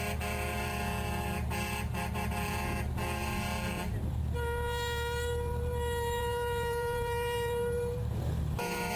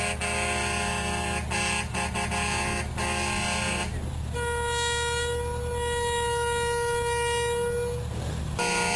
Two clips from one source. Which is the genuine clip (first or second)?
second